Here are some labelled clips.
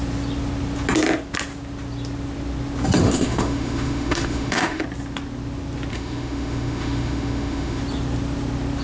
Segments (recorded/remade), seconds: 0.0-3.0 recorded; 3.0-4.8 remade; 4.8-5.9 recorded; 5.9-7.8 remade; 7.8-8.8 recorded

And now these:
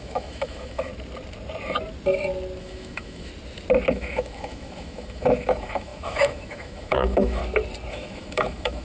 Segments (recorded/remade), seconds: 0.0-0.9 remade; 0.9-2.6 recorded; 2.6-3.3 remade; 3.3-3.9 recorded; 3.9-7.4 remade; 7.4-7.9 recorded; 7.9-8.8 remade

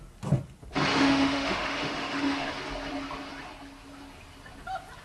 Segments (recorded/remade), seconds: 0.0-0.9 recorded; 0.9-2.5 remade; 2.5-5.0 recorded

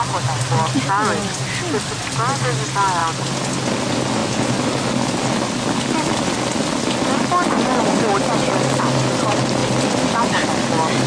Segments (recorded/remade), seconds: 0.0-11.1 recorded

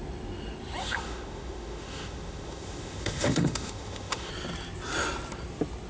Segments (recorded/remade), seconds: 0.0-0.8 recorded; 0.8-4.3 remade; 4.3-5.9 recorded

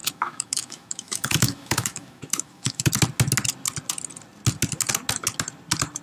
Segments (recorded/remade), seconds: 0.0-2.9 remade; 2.9-6.0 recorded